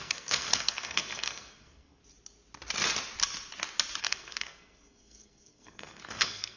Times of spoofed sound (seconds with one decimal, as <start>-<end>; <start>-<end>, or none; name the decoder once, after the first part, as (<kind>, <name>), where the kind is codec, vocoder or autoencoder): 0.0-2.0 (codec, SNAC); 4.0-6.6